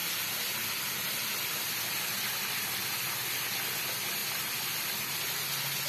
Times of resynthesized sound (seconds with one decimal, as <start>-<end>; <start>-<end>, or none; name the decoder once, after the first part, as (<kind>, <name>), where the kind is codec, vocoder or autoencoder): none